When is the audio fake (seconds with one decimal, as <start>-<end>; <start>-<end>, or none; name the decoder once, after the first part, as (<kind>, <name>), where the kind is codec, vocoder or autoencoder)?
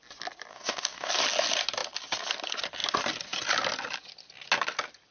0.5-1.1 (codec, DAC)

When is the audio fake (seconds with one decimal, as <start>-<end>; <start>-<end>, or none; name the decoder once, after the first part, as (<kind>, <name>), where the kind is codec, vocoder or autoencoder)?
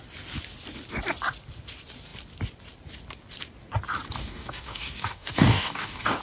4.2-6.2 (codec, DAC)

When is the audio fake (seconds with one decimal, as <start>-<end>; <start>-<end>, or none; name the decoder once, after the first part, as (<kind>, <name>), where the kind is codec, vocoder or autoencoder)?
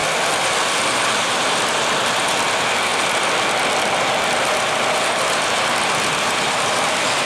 none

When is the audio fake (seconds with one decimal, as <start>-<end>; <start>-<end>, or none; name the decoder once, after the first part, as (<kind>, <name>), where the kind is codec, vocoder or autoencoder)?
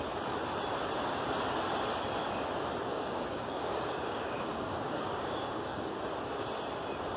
2.9-6.0 (codec, DAC)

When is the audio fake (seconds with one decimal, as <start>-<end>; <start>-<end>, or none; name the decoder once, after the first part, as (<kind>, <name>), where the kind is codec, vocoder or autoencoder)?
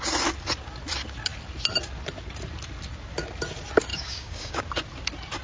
3.9-4.6 (codec, DAC)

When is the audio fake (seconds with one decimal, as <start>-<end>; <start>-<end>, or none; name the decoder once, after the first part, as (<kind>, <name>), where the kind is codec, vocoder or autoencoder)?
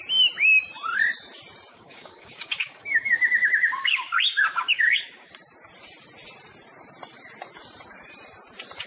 1.7-5.3 (codec, DAC)